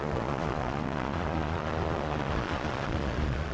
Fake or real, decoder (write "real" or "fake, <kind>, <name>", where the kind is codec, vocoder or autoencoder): fake, vocoder, Vocos